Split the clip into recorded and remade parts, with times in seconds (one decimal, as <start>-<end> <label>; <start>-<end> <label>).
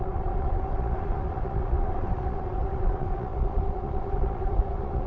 0.0-5.1 remade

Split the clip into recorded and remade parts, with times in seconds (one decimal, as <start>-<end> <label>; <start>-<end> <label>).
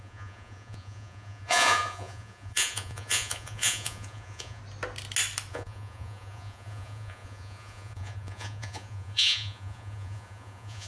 0.0-4.6 remade; 4.6-5.5 recorded; 5.5-10.9 remade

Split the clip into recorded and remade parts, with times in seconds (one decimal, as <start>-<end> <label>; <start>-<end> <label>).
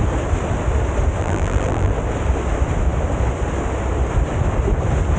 0.0-1.2 recorded; 1.2-1.9 remade; 1.9-5.2 recorded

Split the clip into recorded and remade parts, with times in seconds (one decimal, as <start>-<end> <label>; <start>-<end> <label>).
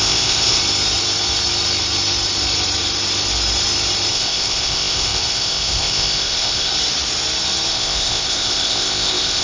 0.0-0.6 remade; 0.6-4.1 recorded; 4.1-6.7 remade; 6.7-7.7 recorded; 7.7-9.4 remade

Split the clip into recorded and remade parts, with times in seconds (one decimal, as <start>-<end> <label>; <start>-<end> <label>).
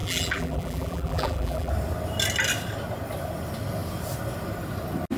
0.0-1.7 remade; 1.7-5.2 recorded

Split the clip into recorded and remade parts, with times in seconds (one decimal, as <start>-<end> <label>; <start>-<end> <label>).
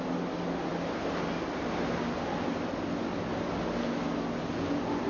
0.0-5.1 recorded